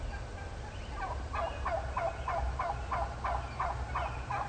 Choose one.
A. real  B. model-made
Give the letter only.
A